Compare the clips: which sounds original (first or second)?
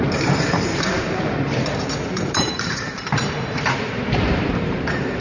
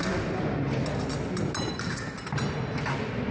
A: second